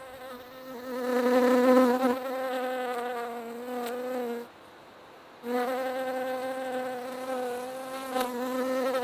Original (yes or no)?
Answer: yes